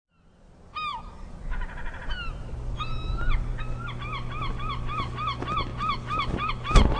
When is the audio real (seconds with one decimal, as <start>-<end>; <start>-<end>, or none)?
0.0-7.0